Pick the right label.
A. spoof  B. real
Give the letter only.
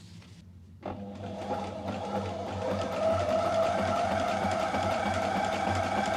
B